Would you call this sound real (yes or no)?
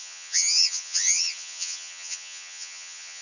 no